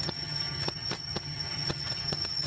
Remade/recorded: remade